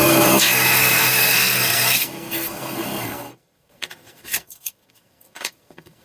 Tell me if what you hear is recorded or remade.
remade